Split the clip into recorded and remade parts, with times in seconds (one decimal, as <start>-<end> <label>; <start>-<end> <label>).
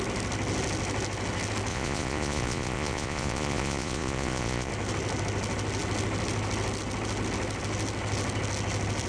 0.0-1.7 recorded; 1.7-4.7 remade; 4.7-9.1 recorded